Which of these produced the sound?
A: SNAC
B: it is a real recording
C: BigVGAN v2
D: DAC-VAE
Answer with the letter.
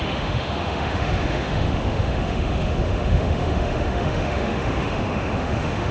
D